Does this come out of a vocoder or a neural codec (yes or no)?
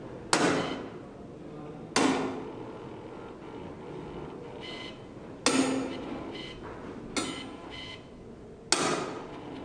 no